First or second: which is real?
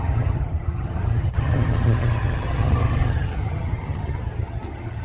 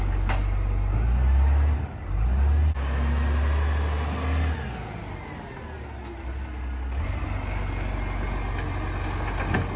second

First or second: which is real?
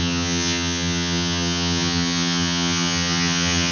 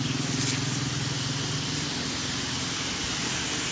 second